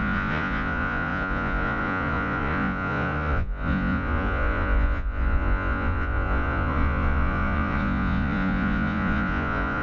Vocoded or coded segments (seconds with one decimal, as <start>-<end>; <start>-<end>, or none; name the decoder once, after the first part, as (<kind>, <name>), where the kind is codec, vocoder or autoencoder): 0.0-9.8 (vocoder, Vocos)